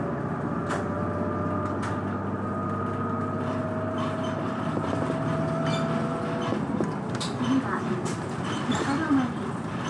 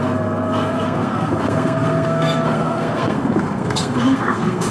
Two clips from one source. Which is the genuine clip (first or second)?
first